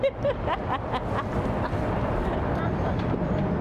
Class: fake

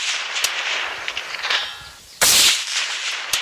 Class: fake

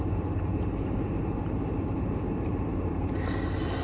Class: fake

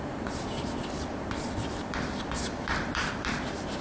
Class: fake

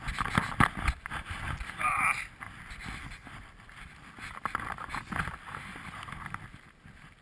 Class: real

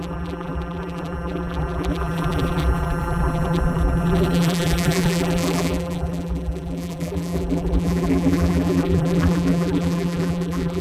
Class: fake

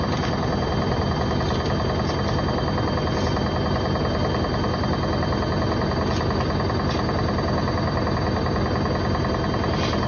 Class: real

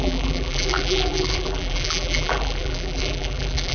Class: fake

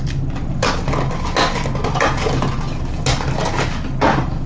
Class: real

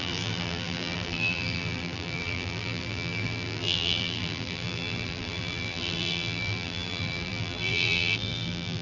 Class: fake